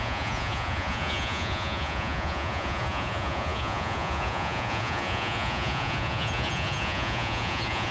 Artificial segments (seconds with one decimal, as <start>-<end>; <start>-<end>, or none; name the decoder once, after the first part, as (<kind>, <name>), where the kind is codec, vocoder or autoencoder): 0.0-7.9 (vocoder, Vocos)